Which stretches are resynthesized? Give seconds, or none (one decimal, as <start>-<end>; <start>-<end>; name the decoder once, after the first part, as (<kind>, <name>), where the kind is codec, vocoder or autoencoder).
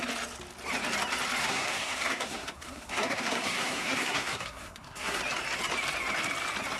1.4-5.2 (codec, SNAC)